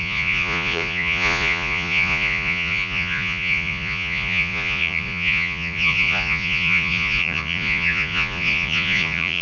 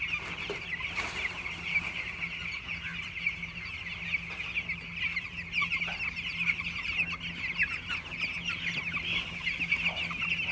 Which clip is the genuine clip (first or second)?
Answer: second